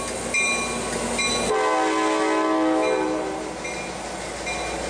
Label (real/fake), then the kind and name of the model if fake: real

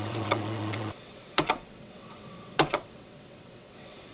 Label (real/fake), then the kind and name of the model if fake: fake, vocoder, WaveNeXt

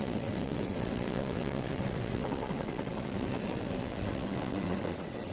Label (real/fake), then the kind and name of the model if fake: fake, vocoder, WaveNeXt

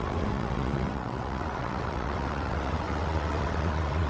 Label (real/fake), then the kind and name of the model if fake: fake, vocoder, WaveNeXt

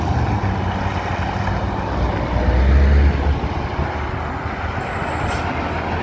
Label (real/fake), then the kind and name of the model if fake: real